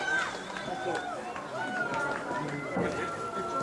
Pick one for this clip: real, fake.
real